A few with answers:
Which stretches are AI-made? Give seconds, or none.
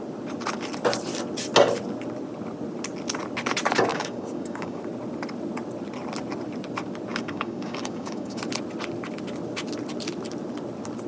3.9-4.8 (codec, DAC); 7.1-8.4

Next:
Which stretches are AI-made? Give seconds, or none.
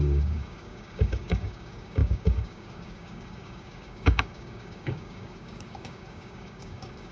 0.0-7.1 (codec, DAC)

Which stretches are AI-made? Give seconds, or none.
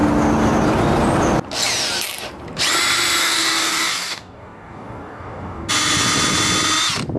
3.2-5.7 (codec, DAC)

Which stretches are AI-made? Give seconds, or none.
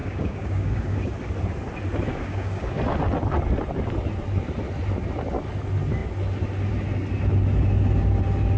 0.0-1.1 (codec, DAC); 2.1-2.7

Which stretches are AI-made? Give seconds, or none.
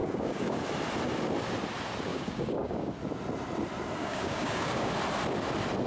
0.0-0.6 (codec, DAC); 2.1-2.9; 4.0-4.9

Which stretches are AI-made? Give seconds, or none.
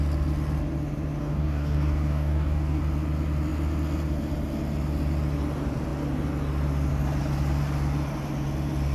1.2-2.8 (codec, DAC)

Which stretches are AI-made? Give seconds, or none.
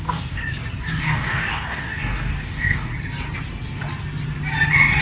0.0-0.4 (codec, DAC); 1.0-2.9